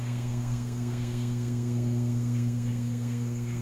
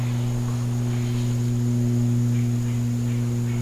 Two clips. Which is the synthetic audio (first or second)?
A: first